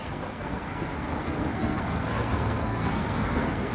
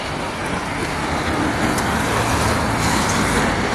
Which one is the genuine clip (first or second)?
second